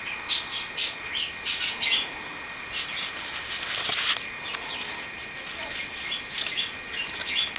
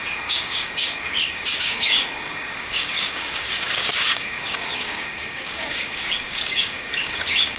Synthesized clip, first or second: second